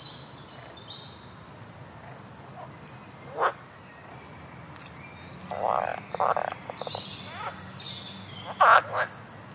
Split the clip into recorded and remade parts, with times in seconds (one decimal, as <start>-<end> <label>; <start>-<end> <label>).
0.0-9.5 recorded